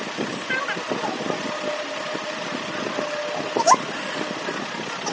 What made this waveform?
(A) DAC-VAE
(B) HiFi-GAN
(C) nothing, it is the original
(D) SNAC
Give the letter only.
C